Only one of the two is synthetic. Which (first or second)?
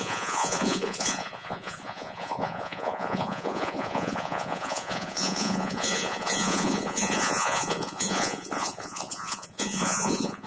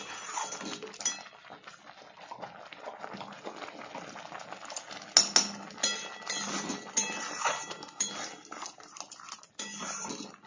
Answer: first